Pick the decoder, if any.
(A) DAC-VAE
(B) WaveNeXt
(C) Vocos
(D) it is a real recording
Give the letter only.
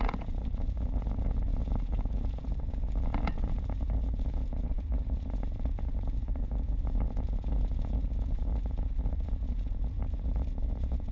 C